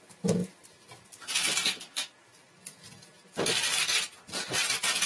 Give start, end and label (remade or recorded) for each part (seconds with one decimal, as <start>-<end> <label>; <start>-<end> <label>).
0.0-5.1 recorded